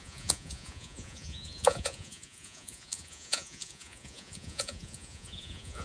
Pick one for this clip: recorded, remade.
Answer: remade